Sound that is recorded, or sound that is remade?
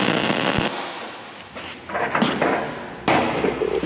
recorded